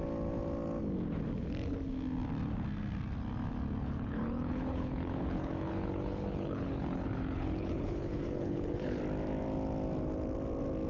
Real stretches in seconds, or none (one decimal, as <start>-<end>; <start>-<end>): 0.0-3.8; 9.0-10.9